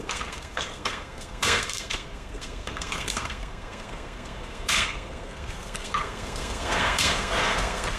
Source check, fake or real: fake